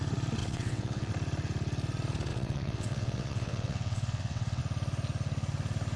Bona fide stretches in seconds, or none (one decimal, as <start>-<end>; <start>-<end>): 0.0-0.4; 1.1-2.3; 4.6-6.0